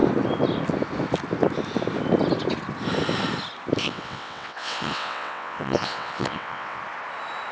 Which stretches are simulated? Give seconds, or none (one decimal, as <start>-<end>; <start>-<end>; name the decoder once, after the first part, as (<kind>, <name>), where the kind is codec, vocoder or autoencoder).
3.8-6.8 (vocoder, WaveNeXt)